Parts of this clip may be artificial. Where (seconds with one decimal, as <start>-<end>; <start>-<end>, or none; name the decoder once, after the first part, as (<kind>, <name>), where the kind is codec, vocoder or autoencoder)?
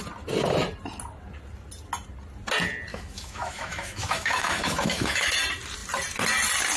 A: 2.9-5.3 (autoencoder, DAC-VAE)